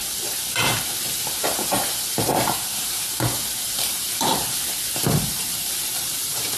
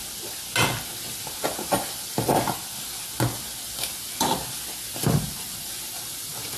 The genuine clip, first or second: second